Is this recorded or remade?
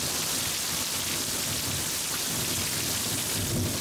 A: recorded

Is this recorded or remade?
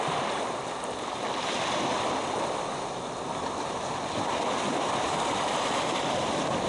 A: recorded